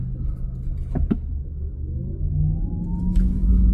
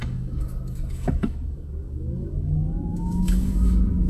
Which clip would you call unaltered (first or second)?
first